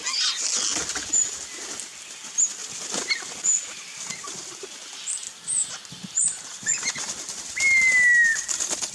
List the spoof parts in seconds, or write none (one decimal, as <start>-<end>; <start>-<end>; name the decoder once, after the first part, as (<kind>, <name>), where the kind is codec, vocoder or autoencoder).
none